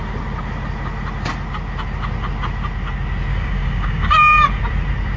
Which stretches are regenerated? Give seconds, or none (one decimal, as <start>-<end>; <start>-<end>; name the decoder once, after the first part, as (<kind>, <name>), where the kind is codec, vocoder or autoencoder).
3.3-4.1 (codec, DAC)